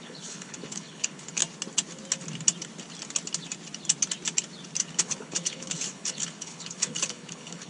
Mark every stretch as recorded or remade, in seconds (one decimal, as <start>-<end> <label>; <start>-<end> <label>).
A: 0.0-1.4 remade; 1.4-4.9 recorded; 4.9-7.7 remade